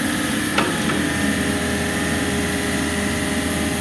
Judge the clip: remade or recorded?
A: recorded